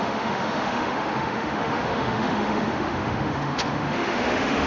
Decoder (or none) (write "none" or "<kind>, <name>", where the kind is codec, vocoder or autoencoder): autoencoder, DAC-VAE